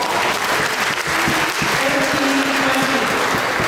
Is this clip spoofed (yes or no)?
no